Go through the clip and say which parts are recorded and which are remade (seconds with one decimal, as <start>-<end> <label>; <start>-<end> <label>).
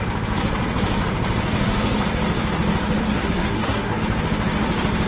0.0-3.0 recorded; 3.0-4.0 remade; 4.0-5.1 recorded